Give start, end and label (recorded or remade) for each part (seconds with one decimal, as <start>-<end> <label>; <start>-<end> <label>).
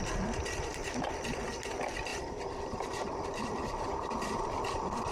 0.0-2.1 recorded; 2.1-5.1 remade